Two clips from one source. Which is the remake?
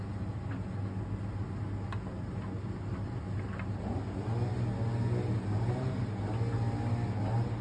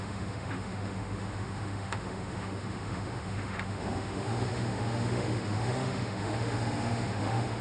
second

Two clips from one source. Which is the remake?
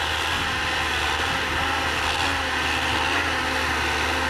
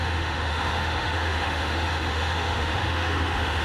second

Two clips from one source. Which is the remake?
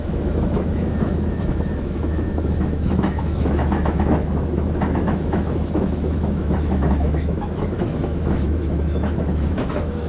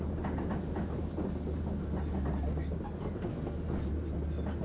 first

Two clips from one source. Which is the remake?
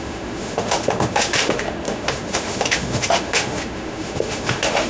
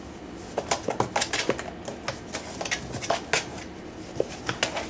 first